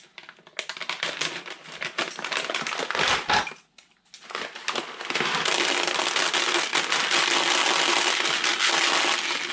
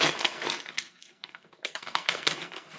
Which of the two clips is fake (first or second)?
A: second